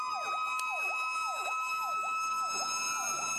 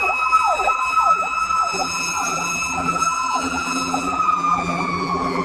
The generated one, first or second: second